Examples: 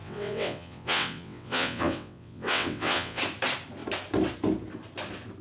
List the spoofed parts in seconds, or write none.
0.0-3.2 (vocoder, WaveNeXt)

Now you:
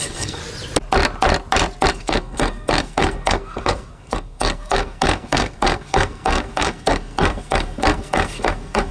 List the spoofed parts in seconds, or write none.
0.0-0.4 (codec, SNAC); 1.9-8.9